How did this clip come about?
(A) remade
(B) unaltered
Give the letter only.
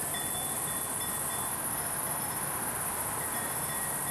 B